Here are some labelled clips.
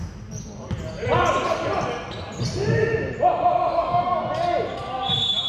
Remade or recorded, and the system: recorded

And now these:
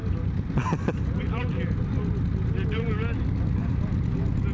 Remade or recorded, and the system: recorded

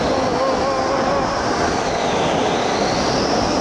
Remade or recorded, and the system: recorded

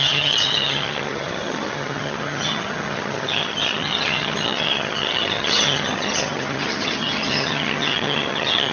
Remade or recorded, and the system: remade, vocoder, HiFi-GAN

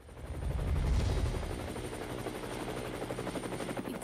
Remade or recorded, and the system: recorded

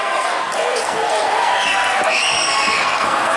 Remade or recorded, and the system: remade, codec, SNAC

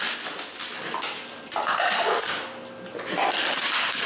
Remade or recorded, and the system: recorded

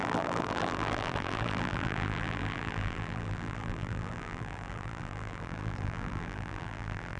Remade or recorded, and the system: remade, vocoder, BigVGAN v2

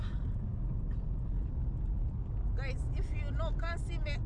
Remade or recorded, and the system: recorded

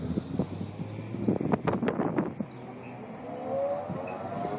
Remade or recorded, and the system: recorded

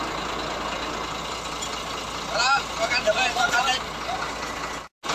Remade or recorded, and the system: recorded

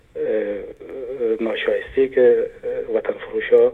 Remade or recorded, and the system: remade, autoencoder, DAC-VAE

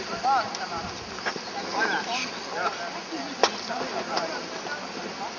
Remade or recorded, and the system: recorded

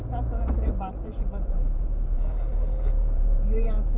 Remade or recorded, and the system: remade, vocoder, Vocos